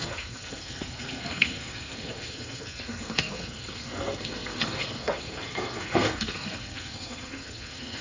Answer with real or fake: fake